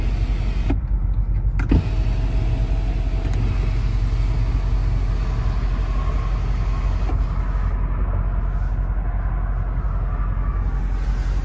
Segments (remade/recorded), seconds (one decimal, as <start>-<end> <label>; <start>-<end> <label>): 0.0-11.4 recorded